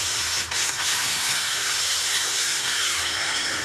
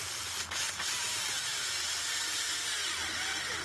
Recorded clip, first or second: second